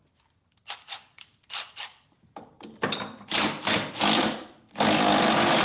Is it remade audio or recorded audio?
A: recorded